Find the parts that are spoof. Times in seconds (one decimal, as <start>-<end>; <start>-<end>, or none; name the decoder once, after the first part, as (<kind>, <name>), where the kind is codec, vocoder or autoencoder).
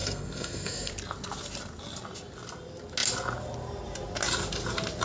0.0-0.9 (codec, SNAC)